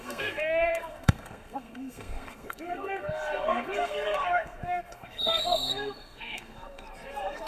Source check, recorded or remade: remade